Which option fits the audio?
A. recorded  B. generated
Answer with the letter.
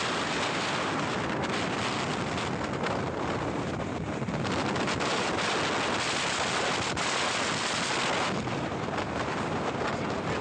A